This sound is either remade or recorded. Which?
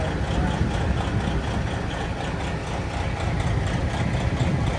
recorded